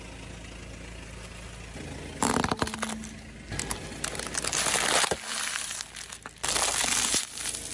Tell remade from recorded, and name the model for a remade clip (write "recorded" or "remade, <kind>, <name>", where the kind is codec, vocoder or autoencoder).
recorded